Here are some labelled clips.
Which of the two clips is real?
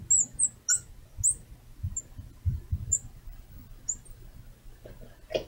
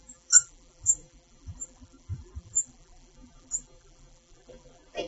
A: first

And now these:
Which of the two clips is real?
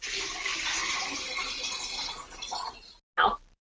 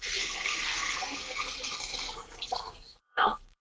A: first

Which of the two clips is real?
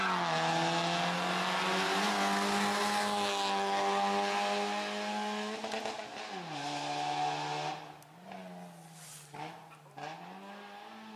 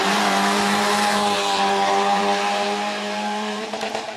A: first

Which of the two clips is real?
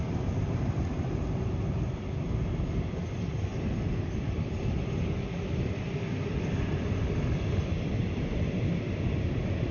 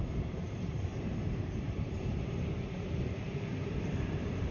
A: first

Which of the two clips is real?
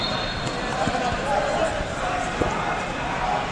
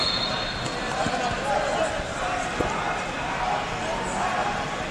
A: second